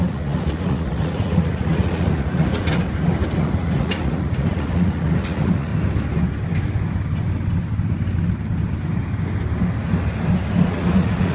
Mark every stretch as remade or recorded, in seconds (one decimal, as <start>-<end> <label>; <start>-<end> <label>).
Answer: 0.0-2.7 remade; 2.7-3.3 recorded; 3.3-5.7 remade; 5.7-10.7 recorded; 10.7-11.3 remade